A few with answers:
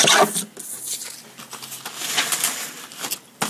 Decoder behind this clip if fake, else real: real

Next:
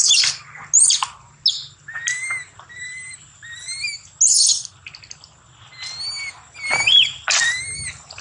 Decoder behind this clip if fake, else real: real